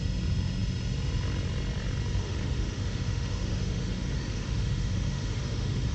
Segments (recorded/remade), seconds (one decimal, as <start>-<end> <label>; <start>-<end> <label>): 0.0-2.2 recorded; 2.2-5.9 remade

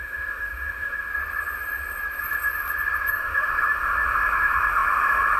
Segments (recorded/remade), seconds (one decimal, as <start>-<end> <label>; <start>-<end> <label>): 0.0-1.1 remade; 1.1-3.1 recorded; 3.1-5.4 remade

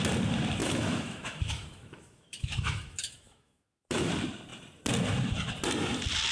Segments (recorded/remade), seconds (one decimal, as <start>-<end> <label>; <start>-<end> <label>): 0.0-0.6 recorded; 0.6-4.1 remade; 4.1-6.3 recorded

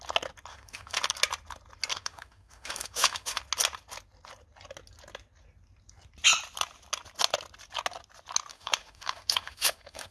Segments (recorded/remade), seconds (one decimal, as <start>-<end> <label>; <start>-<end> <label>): 0.0-0.5 recorded; 0.5-1.0 remade; 1.0-1.9 recorded; 1.9-3.4 remade; 3.4-8.5 recorded; 8.5-10.1 remade

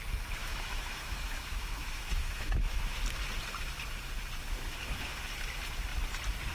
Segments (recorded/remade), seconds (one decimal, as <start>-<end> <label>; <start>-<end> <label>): 0.0-0.4 recorded; 0.4-3.0 remade; 3.0-4.4 recorded; 4.4-5.2 remade; 5.2-6.5 recorded

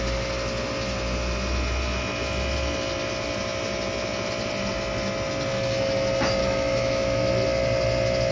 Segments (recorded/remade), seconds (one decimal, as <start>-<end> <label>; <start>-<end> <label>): 0.0-6.4 recorded; 6.4-7.3 remade; 7.3-8.3 recorded

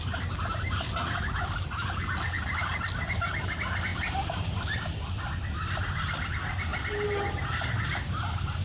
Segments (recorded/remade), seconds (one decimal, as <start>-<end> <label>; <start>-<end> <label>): 0.0-8.6 recorded

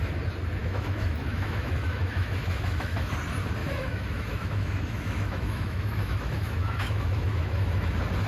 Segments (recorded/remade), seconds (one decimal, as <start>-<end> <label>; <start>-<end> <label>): 0.0-0.6 recorded; 0.6-3.1 remade; 3.1-3.6 recorded; 3.6-7.9 remade; 7.9-8.3 recorded